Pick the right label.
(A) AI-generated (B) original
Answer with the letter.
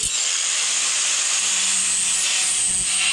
B